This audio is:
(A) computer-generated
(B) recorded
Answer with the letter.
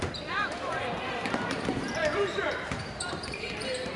A